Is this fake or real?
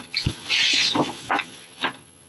fake